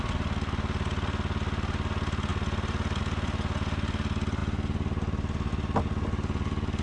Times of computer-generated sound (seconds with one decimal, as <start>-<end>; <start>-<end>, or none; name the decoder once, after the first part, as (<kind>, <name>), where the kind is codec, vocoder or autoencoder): none

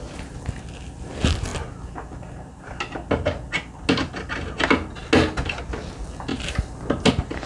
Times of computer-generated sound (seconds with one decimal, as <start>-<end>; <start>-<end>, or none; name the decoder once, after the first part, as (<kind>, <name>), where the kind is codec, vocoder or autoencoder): none

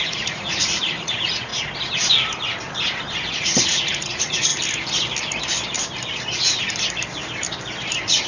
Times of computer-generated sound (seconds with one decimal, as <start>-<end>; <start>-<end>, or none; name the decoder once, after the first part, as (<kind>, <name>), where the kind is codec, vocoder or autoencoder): 0.0-1.5 (vocoder, Vocos); 3.3-4.5